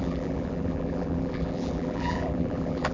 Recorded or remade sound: remade